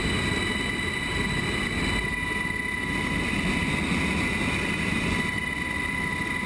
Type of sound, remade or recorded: recorded